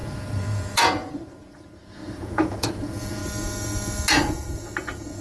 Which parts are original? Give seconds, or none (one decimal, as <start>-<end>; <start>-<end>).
3.2-4.3